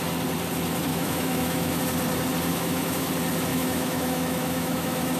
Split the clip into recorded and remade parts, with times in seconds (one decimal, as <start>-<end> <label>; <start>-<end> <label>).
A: 0.0-0.9 recorded; 0.9-1.8 remade; 1.8-2.5 recorded; 2.5-3.1 remade; 3.1-3.5 recorded; 3.5-5.2 remade